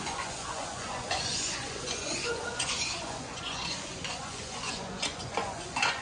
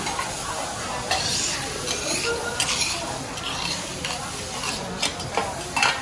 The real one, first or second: second